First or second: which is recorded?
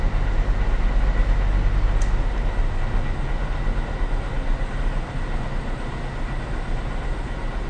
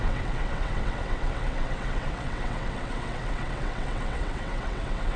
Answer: first